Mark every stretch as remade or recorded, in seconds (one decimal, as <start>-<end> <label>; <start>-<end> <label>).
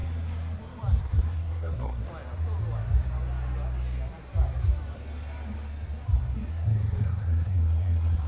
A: 0.0-1.0 recorded; 1.0-2.1 remade; 2.1-6.5 recorded; 6.5-8.3 remade